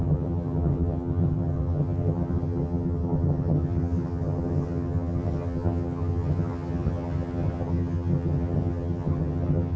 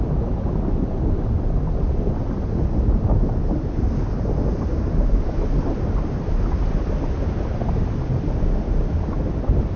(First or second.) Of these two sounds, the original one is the second